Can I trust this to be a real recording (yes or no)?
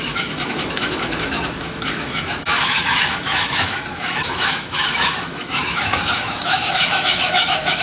no